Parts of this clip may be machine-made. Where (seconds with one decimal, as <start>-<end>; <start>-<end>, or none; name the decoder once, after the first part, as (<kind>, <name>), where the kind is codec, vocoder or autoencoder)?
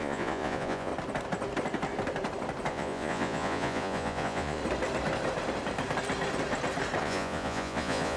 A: 0.0-0.9 (vocoder, Vocos); 2.7-4.6; 7.0-8.2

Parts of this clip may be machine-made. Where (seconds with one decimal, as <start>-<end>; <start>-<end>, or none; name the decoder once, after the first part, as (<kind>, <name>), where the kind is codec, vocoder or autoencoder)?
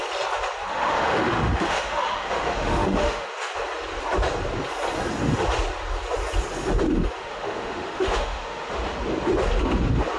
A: 0.7-3.3 (autoencoder, DAC-VAE); 7.2-8.7